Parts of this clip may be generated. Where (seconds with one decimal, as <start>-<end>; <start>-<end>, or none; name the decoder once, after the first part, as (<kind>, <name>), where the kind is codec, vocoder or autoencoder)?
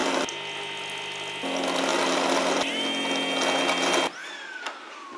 none